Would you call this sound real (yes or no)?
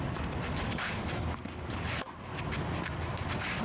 yes